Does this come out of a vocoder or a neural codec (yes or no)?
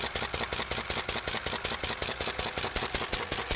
no